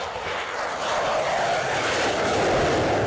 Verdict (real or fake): real